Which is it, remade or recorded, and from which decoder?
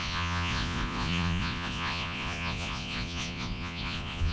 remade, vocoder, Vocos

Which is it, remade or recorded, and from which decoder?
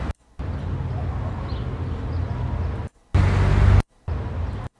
recorded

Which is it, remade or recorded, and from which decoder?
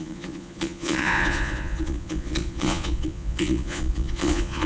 remade, vocoder, Vocos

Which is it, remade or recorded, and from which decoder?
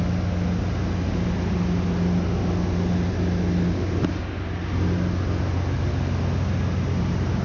recorded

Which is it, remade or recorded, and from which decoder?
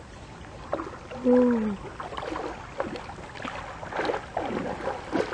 recorded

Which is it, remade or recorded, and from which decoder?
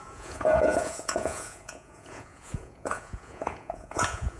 remade, vocoder, Vocos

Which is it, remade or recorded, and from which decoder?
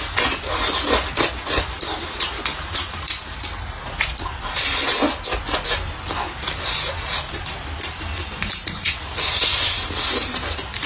recorded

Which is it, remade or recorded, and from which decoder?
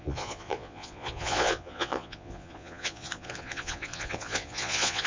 remade, vocoder, Vocos